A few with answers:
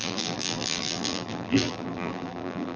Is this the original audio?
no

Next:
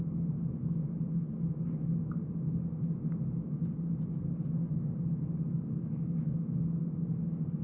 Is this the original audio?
yes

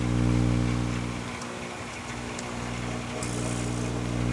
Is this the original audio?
yes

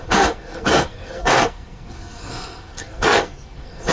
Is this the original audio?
no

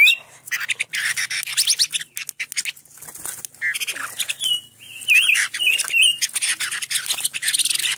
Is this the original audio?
yes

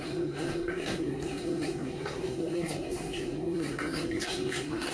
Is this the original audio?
no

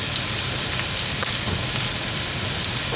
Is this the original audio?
yes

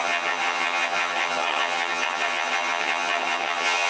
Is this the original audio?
no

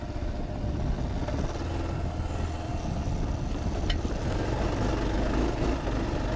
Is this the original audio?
yes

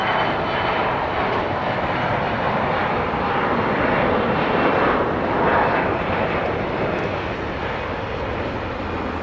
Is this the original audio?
yes